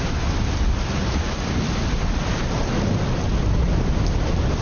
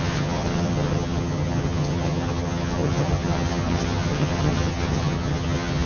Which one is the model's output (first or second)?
second